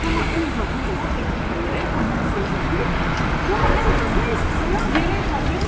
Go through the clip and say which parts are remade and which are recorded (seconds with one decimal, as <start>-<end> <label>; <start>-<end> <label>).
0.0-0.4 recorded; 0.4-3.8 remade; 3.8-5.7 recorded